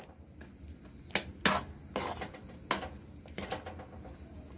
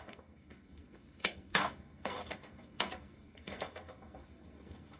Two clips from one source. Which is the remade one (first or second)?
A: second